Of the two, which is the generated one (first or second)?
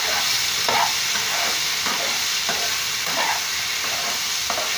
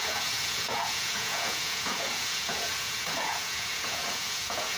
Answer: second